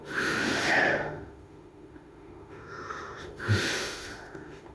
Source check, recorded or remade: remade